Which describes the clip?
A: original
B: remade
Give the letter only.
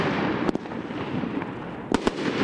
A